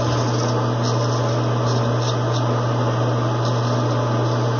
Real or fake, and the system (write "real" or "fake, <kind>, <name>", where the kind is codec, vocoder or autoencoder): real